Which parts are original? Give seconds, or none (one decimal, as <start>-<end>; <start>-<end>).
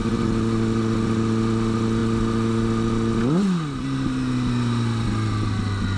0.0-6.0